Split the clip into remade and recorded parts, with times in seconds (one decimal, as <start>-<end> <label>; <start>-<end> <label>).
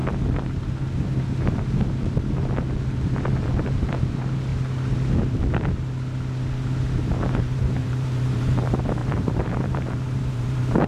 0.0-3.5 recorded; 3.5-4.5 remade; 4.5-7.4 recorded; 7.4-10.9 remade